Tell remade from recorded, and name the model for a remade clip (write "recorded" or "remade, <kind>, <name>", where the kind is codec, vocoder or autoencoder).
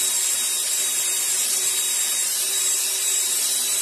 remade, vocoder, BigVGAN v2